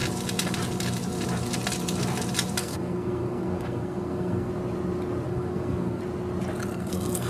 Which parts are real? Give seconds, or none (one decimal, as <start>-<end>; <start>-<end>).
0.0-2.6; 4.5-5.3; 6.0-6.7